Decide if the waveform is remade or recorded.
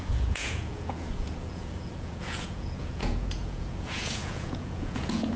remade